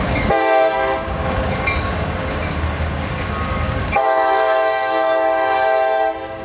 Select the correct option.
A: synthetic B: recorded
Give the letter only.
A